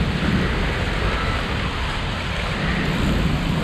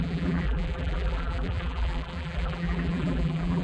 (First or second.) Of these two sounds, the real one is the first